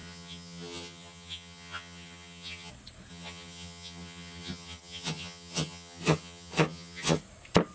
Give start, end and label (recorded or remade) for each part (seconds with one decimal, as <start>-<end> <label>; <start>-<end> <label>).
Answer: 0.0-2.7 remade; 2.7-3.1 recorded; 3.1-7.2 remade; 7.2-7.7 recorded